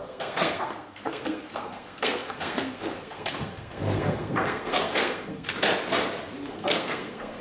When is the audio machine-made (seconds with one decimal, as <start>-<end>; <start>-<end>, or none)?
0.0-5.5; 6.5-7.4